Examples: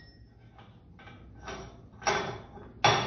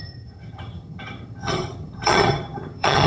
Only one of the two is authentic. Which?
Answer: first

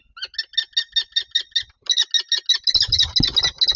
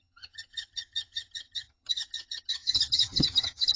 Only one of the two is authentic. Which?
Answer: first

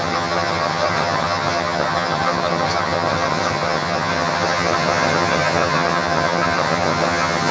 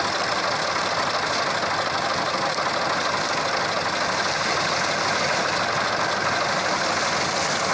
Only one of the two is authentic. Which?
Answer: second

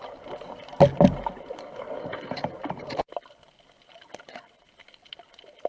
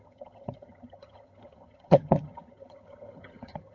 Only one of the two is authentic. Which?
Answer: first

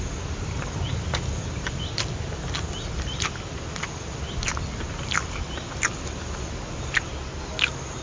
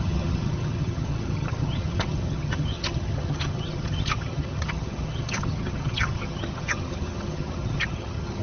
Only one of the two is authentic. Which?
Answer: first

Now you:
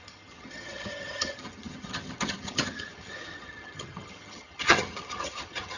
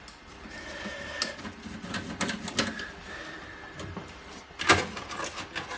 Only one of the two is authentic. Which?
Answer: second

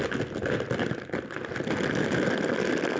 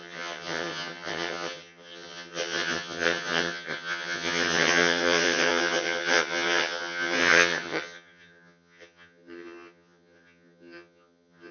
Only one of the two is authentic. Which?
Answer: first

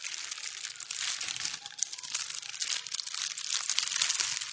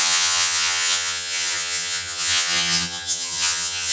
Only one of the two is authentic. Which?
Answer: first